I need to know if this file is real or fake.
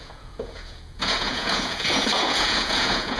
fake